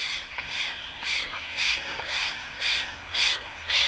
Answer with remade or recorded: remade